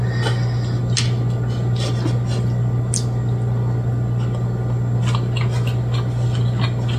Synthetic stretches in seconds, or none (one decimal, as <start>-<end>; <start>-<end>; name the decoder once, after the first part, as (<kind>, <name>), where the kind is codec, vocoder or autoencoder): none